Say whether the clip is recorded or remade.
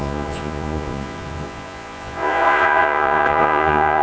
remade